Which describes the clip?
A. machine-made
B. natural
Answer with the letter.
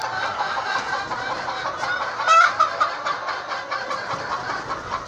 B